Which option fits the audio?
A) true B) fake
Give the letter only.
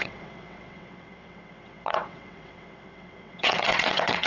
B